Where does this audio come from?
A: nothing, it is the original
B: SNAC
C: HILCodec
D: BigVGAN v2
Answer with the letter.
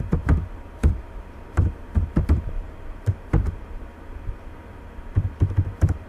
D